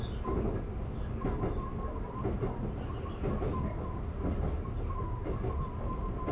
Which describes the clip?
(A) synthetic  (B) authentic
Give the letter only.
B